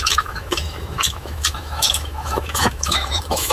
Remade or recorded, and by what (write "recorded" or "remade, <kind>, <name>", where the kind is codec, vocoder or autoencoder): remade, autoencoder, DAC-VAE